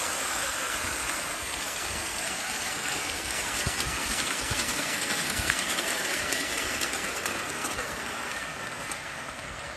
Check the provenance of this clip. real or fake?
fake